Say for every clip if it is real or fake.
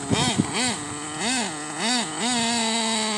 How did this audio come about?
real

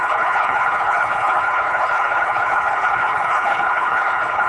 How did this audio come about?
fake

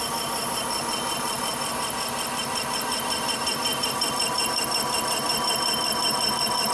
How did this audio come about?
real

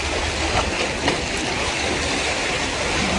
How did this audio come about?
real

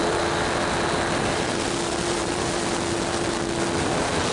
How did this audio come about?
real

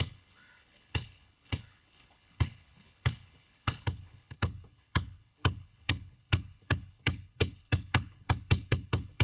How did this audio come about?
fake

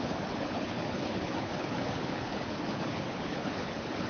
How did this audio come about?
fake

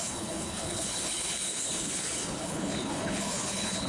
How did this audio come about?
fake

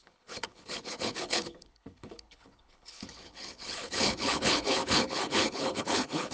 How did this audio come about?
fake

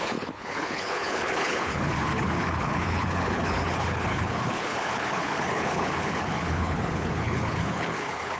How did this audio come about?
fake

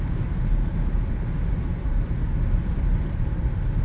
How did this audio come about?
real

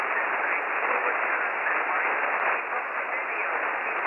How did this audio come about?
real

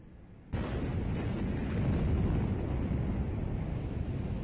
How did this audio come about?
real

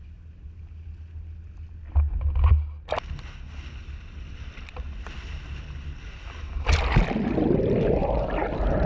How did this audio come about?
real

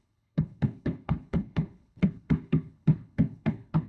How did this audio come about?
fake